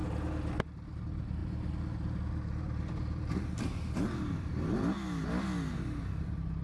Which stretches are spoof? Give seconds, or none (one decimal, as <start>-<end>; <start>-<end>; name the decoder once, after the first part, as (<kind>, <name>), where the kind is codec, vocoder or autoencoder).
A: none